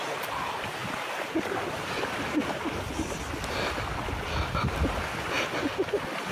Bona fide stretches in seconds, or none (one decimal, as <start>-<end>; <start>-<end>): 0.0-6.3